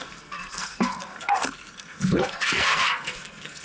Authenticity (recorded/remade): remade